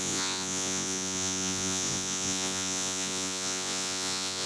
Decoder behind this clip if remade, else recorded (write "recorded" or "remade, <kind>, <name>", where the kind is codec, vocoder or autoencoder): remade, vocoder, Vocos